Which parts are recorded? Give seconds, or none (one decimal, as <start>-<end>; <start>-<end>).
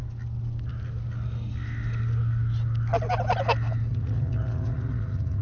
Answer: 0.0-3.9